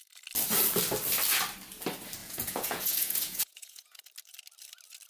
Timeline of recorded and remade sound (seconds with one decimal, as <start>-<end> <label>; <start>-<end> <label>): 0.0-2.2 recorded; 2.2-4.0 remade; 4.0-5.1 recorded